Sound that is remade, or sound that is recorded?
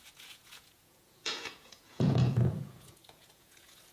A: remade